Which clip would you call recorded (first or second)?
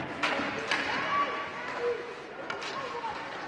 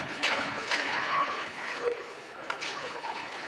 first